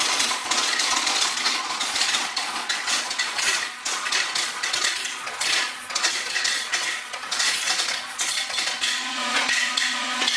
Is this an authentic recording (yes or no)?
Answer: no